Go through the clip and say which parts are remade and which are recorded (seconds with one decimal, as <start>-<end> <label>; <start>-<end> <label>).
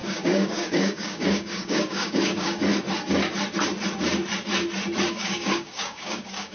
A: 0.0-2.6 remade; 2.6-5.1 recorded; 5.1-6.5 remade